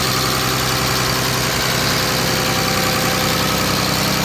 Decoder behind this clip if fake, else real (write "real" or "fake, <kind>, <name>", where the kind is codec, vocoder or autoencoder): real